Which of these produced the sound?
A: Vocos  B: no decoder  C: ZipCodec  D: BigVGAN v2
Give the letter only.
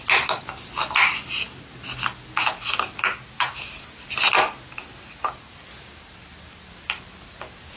B